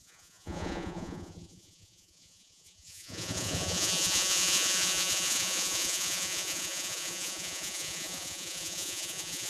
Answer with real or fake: fake